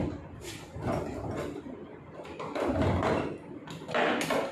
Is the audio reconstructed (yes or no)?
no